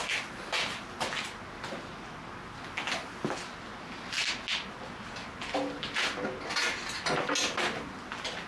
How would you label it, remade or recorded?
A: recorded